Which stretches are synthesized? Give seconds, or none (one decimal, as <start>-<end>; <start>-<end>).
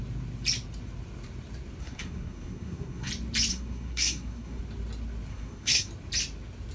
1.8-3.1; 3.5-4.6; 5.3-5.9